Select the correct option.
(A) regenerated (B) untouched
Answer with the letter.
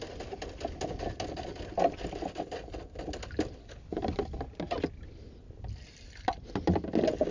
B